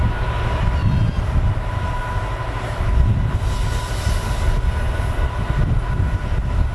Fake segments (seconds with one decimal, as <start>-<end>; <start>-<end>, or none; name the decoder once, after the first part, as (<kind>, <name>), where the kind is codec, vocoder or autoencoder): none